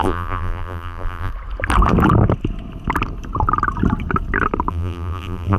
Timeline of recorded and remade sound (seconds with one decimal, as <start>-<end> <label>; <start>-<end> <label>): 0.0-1.3 remade; 1.3-4.7 recorded; 4.7-5.6 remade